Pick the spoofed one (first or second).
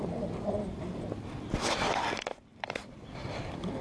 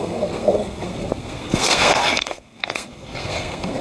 second